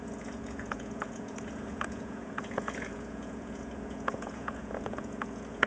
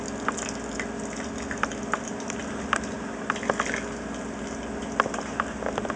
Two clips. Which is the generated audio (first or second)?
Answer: first